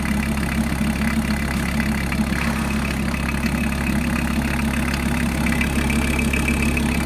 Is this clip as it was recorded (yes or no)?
yes